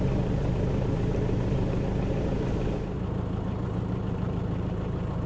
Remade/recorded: remade